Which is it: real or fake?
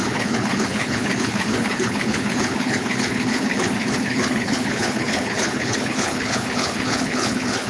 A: fake